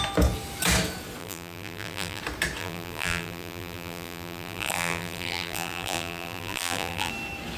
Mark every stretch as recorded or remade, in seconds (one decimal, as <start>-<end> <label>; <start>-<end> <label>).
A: 0.0-1.2 recorded; 1.2-2.2 remade; 2.2-2.6 recorded; 2.6-7.1 remade; 7.1-7.6 recorded